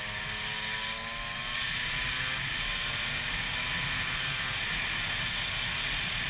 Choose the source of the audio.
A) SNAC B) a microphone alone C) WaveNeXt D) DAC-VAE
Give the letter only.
B